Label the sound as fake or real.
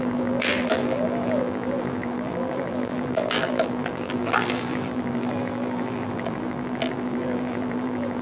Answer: fake